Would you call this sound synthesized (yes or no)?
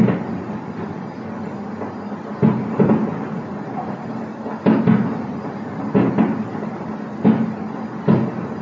no